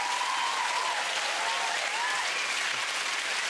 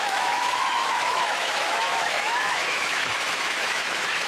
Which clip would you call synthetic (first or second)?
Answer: second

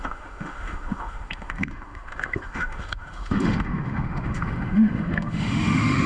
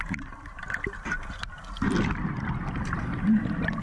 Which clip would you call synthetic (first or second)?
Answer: first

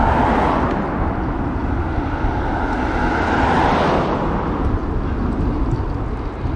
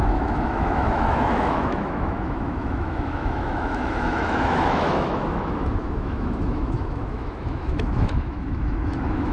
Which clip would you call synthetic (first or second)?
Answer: second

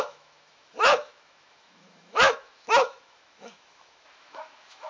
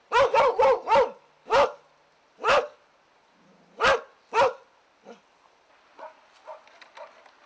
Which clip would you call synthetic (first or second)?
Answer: first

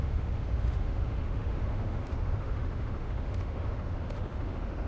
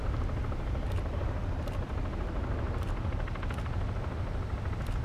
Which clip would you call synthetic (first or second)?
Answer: first